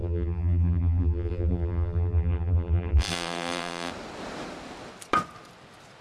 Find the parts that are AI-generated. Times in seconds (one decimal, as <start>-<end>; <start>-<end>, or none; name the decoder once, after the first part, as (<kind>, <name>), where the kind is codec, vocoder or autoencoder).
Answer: 0.0-3.9 (vocoder, BigVGAN v2)